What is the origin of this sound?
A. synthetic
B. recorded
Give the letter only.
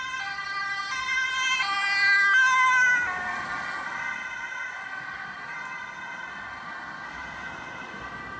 B